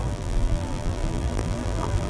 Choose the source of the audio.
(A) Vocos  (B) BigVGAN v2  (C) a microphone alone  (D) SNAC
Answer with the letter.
B